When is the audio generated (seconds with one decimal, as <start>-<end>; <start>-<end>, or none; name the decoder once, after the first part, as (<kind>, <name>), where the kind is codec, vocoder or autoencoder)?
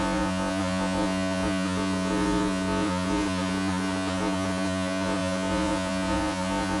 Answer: 0.0-6.8 (vocoder, Vocos)